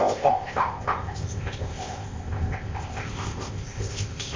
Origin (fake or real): fake